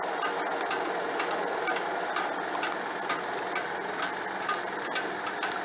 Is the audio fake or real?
real